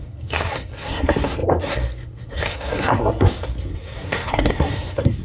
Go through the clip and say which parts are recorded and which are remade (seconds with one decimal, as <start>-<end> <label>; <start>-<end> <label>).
0.0-5.2 remade